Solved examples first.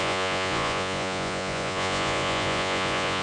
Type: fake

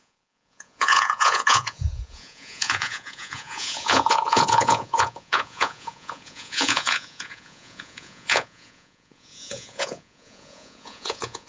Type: fake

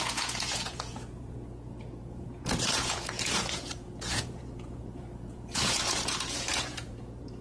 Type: fake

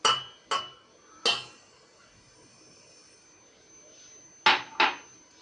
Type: real